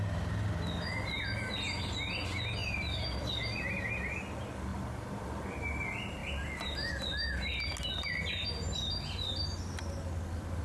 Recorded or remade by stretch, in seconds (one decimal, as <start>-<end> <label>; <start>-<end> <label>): 0.0-2.6 recorded; 2.6-3.9 remade; 3.9-4.7 recorded; 4.7-5.5 remade; 5.5-6.2 recorded; 6.2-6.9 remade; 6.9-10.6 recorded

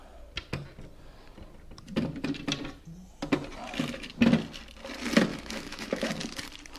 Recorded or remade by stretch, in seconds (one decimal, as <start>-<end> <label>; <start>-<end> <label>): 0.0-5.3 recorded; 5.3-6.1 remade; 6.1-6.8 recorded

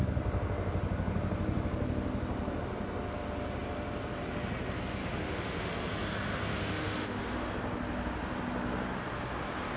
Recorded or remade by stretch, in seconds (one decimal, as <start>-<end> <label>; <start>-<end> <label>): 0.0-5.0 recorded; 5.0-5.7 remade; 5.7-6.5 recorded; 6.5-7.5 remade; 7.5-9.8 recorded

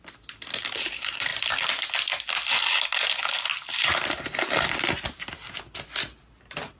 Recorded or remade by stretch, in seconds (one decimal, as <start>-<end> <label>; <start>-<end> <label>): 0.0-6.8 recorded

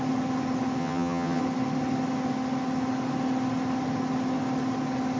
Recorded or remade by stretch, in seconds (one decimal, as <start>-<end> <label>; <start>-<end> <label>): 0.0-0.8 recorded; 0.8-1.4 remade; 1.4-5.2 recorded

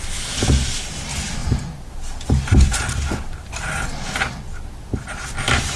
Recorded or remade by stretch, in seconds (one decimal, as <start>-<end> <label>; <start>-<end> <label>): 0.0-5.8 recorded

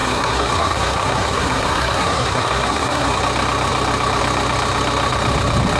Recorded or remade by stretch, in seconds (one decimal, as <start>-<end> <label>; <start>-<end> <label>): 0.0-3.2 remade; 3.2-5.8 recorded